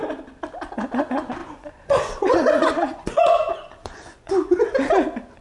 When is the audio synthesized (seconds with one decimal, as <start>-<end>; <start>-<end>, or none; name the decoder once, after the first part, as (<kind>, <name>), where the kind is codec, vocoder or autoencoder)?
1.4-4.6 (vocoder, Vocos)